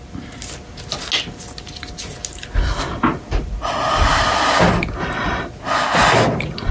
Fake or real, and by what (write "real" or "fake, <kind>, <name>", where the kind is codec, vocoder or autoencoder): real